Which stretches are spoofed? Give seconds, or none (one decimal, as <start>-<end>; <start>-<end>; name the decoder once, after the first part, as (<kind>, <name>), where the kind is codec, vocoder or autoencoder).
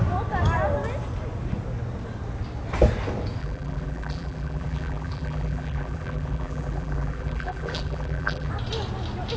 3.4-8.5 (vocoder, BigVGAN v2)